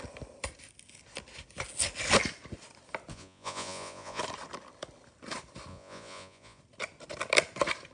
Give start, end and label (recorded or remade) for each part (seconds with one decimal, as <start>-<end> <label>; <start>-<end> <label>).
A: 0.0-3.1 recorded; 3.1-4.2 remade; 4.2-5.7 recorded; 5.7-6.6 remade; 6.6-7.9 recorded